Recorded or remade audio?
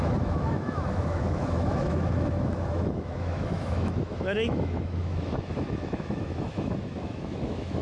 remade